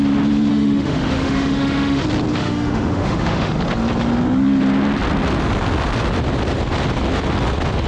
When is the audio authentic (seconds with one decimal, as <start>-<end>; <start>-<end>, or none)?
0.0-0.5; 2.0-2.4; 3.5-7.9